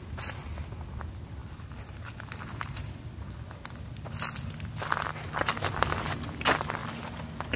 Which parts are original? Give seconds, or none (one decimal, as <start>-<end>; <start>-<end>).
0.0-6.8